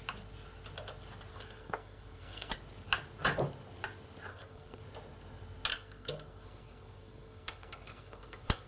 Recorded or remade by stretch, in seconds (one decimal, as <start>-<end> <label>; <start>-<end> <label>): 0.0-1.3 recorded; 1.3-2.5 remade; 2.5-4.3 recorded; 4.3-4.8 remade; 4.8-5.7 recorded; 5.7-8.7 remade